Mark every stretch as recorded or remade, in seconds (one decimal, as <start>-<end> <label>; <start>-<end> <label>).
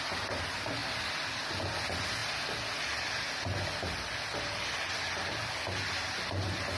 0.0-6.8 recorded